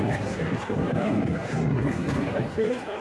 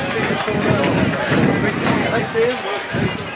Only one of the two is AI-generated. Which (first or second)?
first